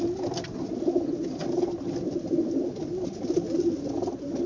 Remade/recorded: recorded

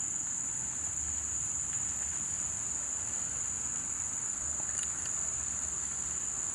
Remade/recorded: recorded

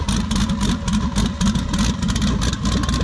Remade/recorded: recorded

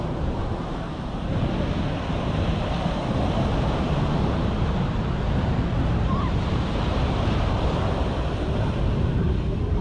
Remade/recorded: remade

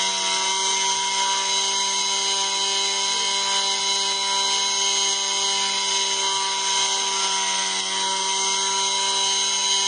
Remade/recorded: recorded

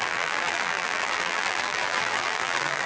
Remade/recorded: remade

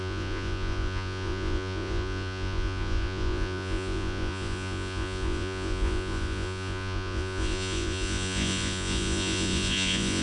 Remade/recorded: remade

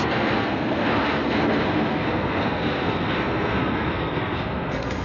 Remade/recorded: remade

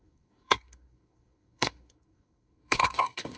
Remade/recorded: remade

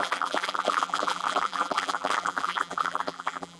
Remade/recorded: remade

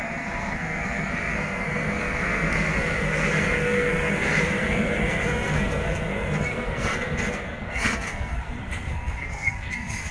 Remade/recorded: remade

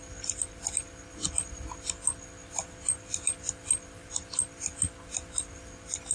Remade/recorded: recorded